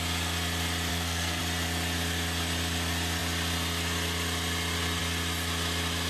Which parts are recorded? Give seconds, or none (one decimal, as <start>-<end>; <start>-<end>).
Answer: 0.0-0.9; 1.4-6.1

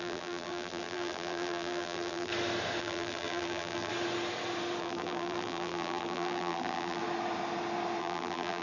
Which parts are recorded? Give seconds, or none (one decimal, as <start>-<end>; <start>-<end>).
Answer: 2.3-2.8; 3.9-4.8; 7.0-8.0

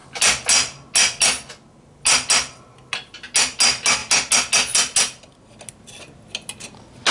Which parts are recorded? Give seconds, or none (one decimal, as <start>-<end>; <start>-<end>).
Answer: 0.0-7.1